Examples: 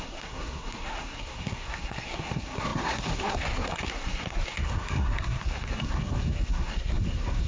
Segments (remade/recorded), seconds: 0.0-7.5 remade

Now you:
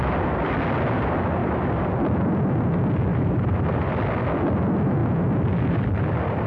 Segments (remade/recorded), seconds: 0.0-1.4 recorded; 1.4-1.9 remade; 1.9-3.1 recorded; 3.1-3.9 remade; 3.9-6.5 recorded

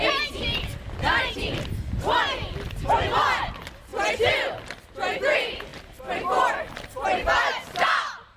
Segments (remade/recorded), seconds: 0.0-8.4 recorded

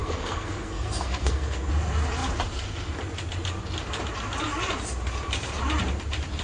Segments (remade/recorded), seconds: 0.0-1.7 remade; 1.7-6.4 recorded

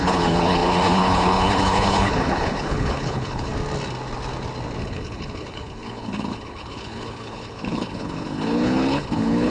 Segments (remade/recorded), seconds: 0.0-3.5 remade; 3.5-4.8 recorded; 4.8-9.5 remade

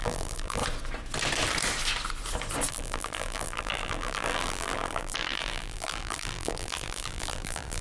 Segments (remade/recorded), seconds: 0.0-0.6 remade; 0.6-2.7 recorded; 2.7-7.8 remade

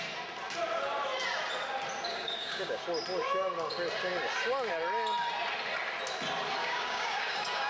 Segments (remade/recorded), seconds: 0.0-2.1 recorded; 2.1-2.8 remade; 2.8-6.6 recorded; 6.6-7.7 remade